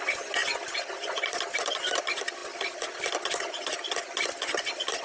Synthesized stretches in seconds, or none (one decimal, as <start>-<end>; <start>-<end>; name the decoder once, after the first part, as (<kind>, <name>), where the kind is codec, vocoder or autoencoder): none